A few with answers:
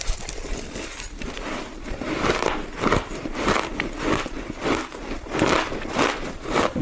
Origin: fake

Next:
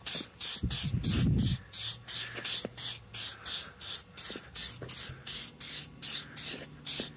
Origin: real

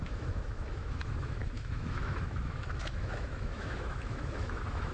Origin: fake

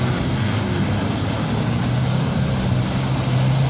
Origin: real